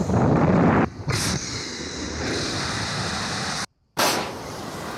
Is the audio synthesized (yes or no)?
yes